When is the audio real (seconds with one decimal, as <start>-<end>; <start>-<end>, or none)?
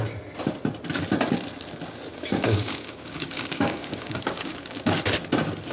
0.0-2.1; 4.9-5.7